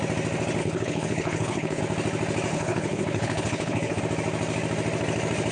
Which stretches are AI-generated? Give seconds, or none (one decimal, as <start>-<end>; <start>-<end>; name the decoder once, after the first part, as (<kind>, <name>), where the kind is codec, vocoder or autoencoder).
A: 0.6-1.8 (codec, HILCodec); 2.5-4.0